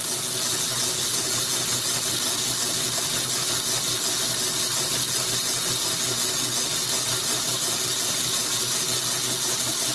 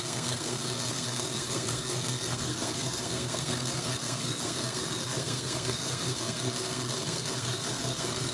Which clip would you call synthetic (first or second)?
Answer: second